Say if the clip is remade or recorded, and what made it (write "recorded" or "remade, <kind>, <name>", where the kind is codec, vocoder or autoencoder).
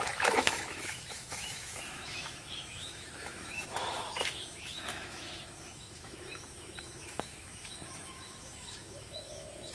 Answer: remade, autoencoder, DAC-VAE